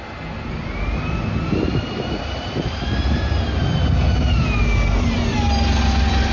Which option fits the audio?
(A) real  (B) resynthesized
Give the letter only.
A